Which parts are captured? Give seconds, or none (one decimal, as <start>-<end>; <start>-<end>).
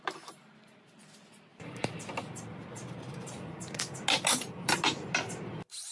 0.0-1.5; 2.0-5.9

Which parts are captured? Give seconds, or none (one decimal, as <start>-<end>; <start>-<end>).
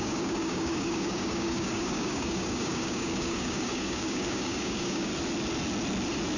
5.1-6.4